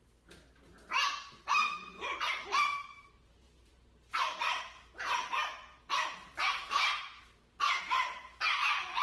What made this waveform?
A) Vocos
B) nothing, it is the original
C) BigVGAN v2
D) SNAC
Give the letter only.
C